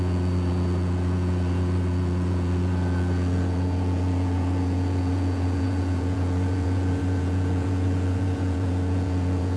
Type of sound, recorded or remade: remade